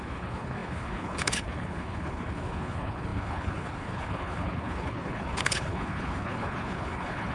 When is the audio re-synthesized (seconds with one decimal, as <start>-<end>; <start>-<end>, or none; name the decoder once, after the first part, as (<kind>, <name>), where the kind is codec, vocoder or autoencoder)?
0.0-7.3 (codec, HILCodec)